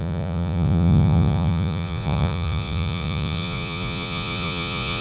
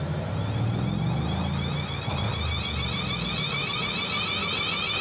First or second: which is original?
second